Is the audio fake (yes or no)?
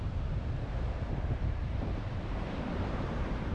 yes